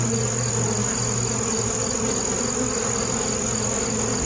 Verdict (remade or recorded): recorded